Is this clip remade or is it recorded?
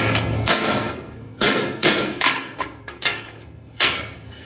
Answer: remade